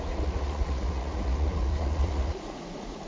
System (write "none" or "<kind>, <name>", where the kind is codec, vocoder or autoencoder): vocoder, Vocos